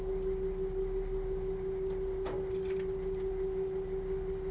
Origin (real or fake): real